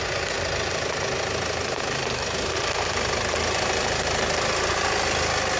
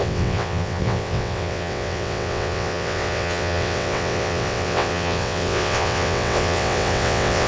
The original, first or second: first